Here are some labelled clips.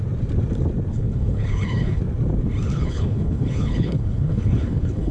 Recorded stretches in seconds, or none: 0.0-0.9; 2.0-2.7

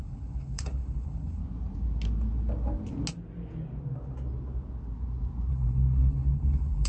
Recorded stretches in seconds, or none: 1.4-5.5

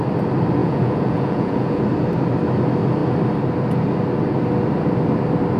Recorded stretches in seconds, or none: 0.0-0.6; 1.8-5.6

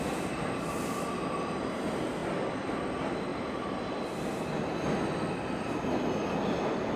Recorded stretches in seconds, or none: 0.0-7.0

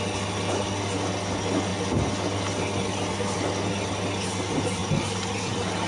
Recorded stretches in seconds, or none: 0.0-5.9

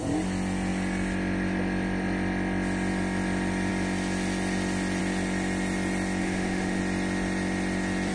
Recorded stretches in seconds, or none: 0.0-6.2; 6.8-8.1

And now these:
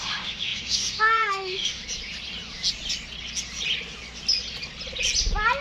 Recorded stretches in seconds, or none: 1.8-5.6